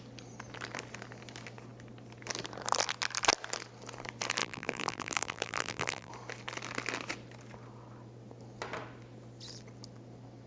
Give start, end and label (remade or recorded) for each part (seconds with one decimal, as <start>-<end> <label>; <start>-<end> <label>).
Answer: 0.0-4.4 recorded; 4.4-6.1 remade; 6.1-10.5 recorded